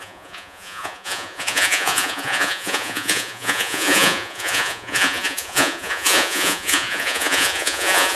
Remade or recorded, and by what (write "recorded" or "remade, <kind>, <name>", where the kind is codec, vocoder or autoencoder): remade, vocoder, Vocos